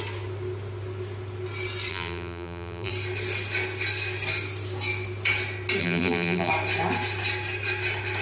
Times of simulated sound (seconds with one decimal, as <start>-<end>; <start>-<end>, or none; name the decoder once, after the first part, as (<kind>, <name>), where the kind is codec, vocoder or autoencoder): 1.9-2.9 (vocoder, BigVGAN v2); 5.8-6.5